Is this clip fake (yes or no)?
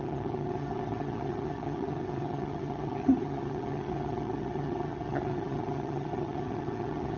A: yes